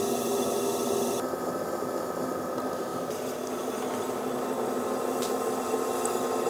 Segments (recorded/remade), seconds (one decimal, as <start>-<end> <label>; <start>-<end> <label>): 0.0-6.5 recorded